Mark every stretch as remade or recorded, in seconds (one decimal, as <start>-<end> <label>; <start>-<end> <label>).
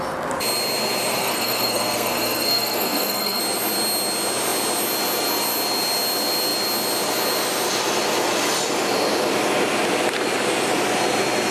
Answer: 0.0-1.2 recorded; 1.2-3.4 remade; 3.4-11.5 recorded